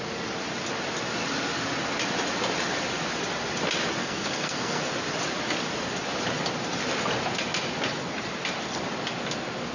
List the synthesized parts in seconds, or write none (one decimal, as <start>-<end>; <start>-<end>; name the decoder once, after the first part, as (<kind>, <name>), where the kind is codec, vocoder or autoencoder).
4.0-4.8 (codec, SNAC)